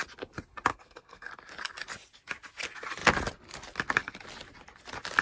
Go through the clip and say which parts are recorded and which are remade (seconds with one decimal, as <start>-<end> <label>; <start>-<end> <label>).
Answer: 0.0-0.7 recorded; 0.7-1.3 remade; 1.3-5.2 recorded